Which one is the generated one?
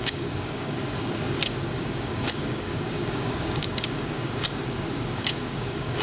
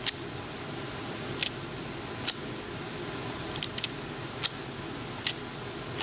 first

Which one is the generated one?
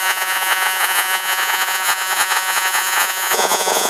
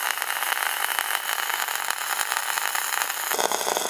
first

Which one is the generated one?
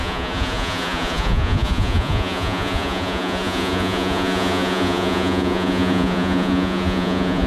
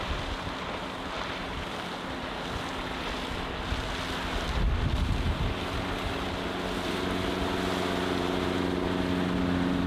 first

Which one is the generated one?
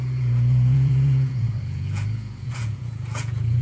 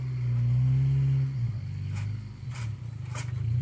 first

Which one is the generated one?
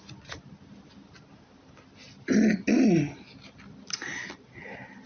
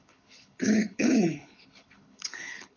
second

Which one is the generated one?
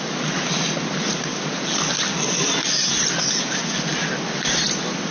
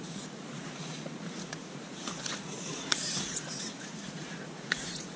second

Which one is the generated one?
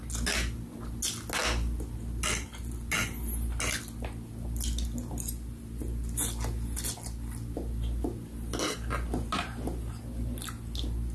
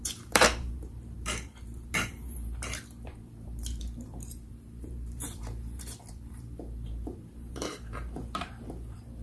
second